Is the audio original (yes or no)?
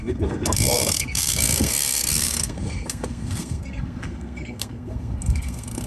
no